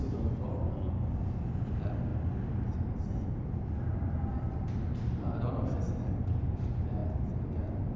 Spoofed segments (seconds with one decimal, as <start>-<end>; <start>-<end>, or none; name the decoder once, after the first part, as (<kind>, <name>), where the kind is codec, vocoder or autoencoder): 1.7-2.1 (vocoder, BigVGAN v2); 2.8-7.0